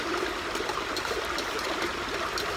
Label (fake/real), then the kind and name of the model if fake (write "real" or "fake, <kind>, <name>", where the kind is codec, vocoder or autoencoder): real